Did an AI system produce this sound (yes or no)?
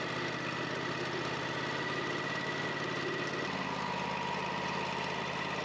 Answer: no